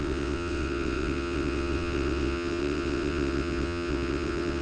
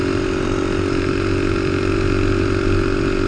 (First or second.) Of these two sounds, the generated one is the first